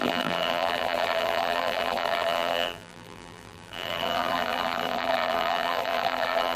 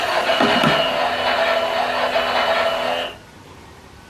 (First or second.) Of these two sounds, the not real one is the first